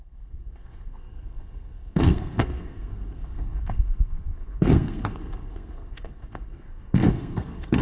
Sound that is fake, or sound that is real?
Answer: fake